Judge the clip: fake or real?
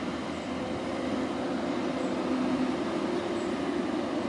real